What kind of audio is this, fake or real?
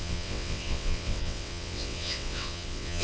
fake